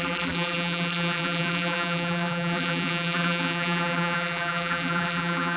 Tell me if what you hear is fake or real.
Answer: fake